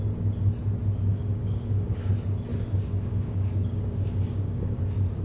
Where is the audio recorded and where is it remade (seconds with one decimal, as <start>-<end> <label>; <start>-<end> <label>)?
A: 0.0-1.1 recorded; 1.1-2.1 remade; 2.1-2.5 recorded; 2.5-4.8 remade; 4.8-5.2 recorded